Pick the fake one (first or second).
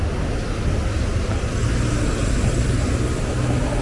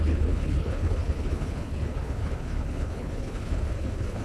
second